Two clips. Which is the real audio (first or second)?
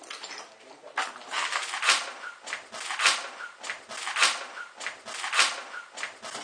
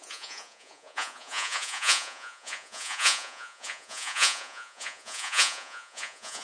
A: first